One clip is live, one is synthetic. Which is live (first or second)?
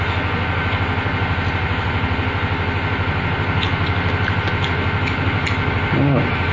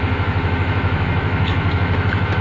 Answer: first